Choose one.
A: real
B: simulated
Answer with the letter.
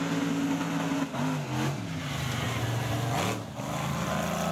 A